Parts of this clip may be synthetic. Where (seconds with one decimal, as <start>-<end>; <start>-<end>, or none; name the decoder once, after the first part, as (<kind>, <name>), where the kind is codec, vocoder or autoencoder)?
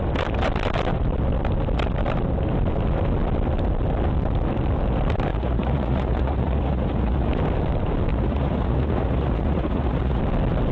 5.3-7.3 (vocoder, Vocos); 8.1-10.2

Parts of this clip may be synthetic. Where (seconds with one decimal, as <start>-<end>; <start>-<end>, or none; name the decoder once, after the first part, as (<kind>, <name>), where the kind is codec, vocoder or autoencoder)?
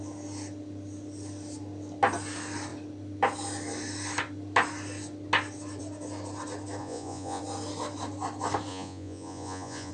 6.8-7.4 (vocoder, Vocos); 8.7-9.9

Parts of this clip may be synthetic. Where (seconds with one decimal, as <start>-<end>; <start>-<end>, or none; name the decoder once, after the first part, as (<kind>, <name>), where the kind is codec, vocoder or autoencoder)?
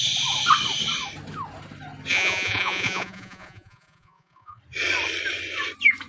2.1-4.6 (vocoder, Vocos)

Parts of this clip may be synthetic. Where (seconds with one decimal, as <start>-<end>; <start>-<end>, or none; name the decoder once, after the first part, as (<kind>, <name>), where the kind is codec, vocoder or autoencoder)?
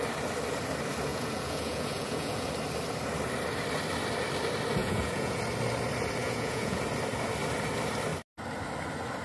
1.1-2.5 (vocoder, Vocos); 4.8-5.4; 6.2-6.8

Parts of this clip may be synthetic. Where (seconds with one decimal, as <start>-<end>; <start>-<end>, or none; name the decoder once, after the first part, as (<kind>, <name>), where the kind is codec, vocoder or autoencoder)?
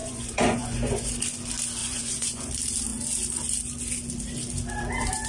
0.0-1.1 (vocoder, Vocos); 1.8-2.5